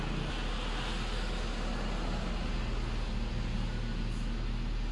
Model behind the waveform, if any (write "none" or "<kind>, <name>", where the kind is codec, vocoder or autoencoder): none